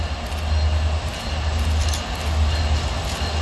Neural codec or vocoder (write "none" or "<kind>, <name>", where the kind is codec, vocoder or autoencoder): none